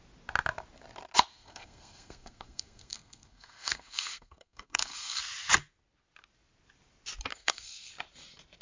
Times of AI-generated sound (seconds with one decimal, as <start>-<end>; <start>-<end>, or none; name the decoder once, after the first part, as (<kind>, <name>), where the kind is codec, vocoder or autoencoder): 1.3-5.2 (codec, SNAC); 7.3-7.9